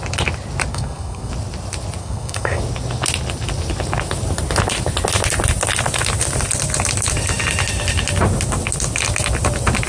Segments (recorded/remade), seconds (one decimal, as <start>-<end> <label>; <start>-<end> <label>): 0.0-0.7 recorded; 0.7-1.3 remade; 1.3-2.0 recorded; 2.0-2.6 remade; 2.6-9.9 recorded